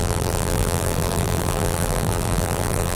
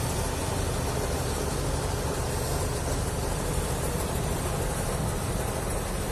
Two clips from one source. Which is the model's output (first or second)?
first